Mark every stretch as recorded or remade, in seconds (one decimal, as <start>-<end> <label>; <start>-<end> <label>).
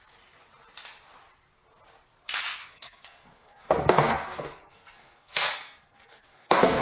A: 0.0-2.6 recorded; 2.6-6.8 remade